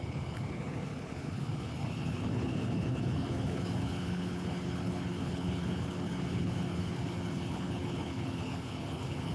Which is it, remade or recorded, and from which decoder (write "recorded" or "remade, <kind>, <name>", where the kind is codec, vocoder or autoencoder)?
remade, codec, HILCodec